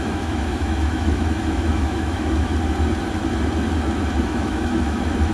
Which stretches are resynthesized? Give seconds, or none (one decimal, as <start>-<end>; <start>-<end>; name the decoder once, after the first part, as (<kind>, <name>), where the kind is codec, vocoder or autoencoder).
0.0-2.5 (autoencoder, DAC-VAE); 4.2-5.3

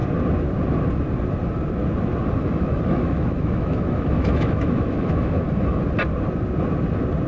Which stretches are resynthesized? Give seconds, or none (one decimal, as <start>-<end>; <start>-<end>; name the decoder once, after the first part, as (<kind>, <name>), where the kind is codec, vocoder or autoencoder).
2.4-5.8 (autoencoder, DAC-VAE)

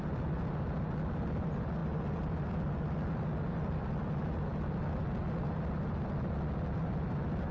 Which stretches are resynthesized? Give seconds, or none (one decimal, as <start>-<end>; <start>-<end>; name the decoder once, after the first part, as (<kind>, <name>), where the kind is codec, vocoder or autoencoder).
none

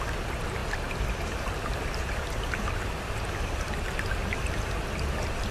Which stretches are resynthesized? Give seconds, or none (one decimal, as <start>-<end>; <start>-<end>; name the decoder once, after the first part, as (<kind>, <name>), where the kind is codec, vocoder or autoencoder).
none

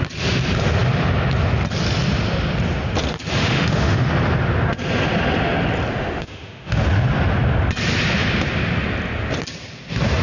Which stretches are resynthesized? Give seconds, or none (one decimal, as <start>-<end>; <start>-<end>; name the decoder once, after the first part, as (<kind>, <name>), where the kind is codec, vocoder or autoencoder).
3.4-4.1 (autoencoder, DAC-VAE); 5.9-6.8

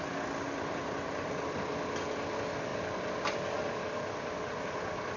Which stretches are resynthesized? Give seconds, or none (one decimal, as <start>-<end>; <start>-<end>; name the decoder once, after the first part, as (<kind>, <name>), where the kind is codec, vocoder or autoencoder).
none

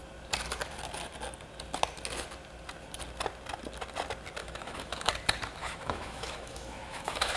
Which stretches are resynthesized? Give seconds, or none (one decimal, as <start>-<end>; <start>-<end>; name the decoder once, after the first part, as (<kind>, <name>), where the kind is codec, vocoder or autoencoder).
4.4-5.1 (autoencoder, DAC-VAE); 5.6-7.4

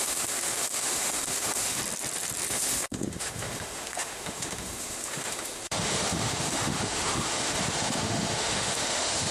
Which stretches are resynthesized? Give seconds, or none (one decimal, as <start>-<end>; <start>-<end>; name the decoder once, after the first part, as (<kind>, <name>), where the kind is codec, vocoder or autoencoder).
0.0-1.8 (autoencoder, DAC-VAE); 2.5-9.3